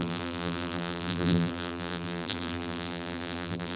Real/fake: fake